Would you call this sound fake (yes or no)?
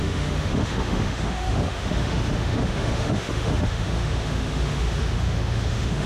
yes